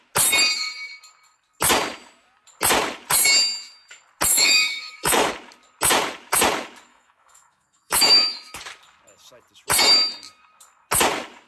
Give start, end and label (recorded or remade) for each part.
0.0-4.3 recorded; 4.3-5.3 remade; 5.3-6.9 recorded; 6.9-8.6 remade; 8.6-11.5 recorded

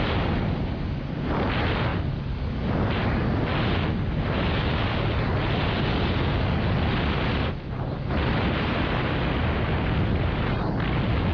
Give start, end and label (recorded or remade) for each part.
0.0-11.3 recorded